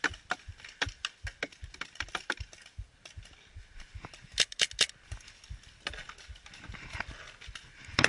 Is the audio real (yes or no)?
yes